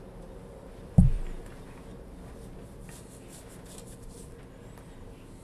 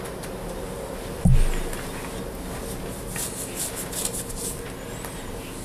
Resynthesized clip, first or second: first